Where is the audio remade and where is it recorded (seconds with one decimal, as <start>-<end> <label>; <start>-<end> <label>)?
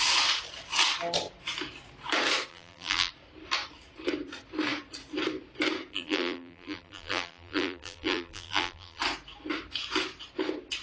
0.0-2.5 recorded; 2.5-3.1 remade; 3.1-5.9 recorded; 5.9-9.0 remade; 9.0-10.8 recorded